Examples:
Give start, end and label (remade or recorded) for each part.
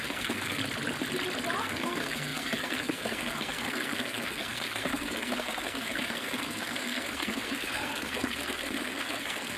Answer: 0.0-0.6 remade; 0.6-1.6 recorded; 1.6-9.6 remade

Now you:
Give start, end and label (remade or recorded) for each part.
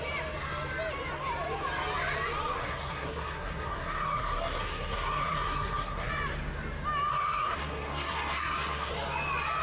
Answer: 0.0-2.6 recorded; 2.6-6.1 remade; 6.1-7.1 recorded; 7.1-8.9 remade; 8.9-9.6 recorded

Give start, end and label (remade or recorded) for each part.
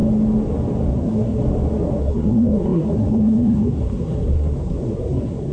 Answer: 0.0-0.9 recorded; 0.9-1.4 remade; 1.4-2.0 recorded; 2.0-5.5 remade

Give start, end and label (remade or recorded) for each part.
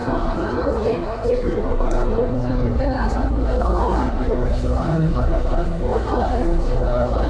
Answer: 0.0-7.3 remade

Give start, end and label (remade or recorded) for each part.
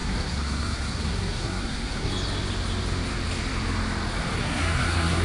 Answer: 0.0-2.1 remade; 2.1-4.4 recorded; 4.4-5.2 remade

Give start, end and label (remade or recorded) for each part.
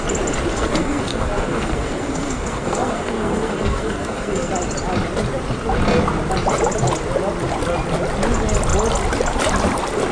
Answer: 0.0-0.5 recorded; 0.5-4.5 remade; 4.5-10.1 recorded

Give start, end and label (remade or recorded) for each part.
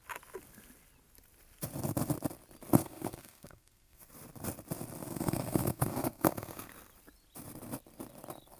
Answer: 0.0-2.8 recorded; 2.8-4.1 remade; 4.1-5.0 recorded; 5.0-6.7 remade; 6.7-8.6 recorded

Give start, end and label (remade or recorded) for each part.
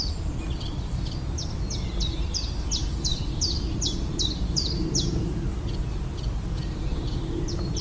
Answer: 0.0-7.8 recorded